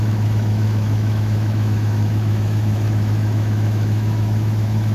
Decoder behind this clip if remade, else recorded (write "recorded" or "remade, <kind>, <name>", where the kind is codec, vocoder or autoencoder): remade, autoencoder, DAC-VAE